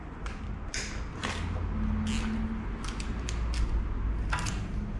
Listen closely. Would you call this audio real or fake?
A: real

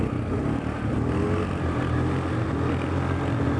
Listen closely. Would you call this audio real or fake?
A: real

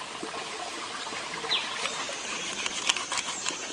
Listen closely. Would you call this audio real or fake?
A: real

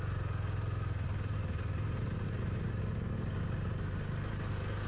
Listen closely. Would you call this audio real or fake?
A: real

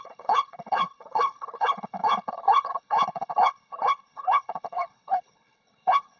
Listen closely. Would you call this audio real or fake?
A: fake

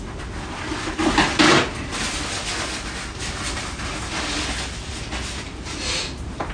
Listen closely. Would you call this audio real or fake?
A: real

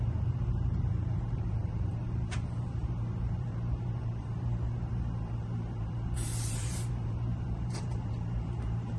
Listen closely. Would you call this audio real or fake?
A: fake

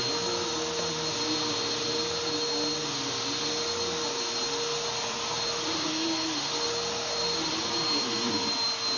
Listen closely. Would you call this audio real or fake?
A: real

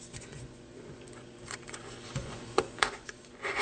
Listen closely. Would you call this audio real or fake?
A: fake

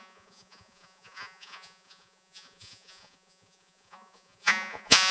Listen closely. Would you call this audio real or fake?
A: fake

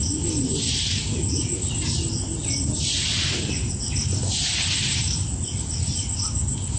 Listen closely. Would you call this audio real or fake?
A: real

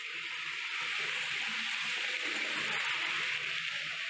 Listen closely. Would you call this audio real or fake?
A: real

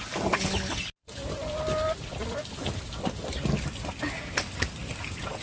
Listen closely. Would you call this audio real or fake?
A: real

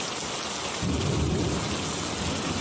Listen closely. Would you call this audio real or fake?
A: real